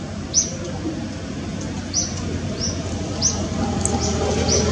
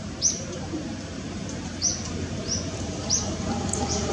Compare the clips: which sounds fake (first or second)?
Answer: second